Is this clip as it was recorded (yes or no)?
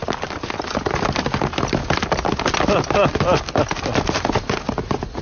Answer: yes